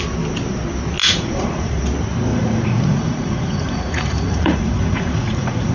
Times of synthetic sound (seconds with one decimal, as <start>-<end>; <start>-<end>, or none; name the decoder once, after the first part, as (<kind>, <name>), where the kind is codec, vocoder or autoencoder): 1.0-1.8 (vocoder, Vocos); 2.3-5.7